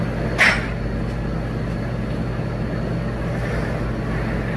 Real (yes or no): yes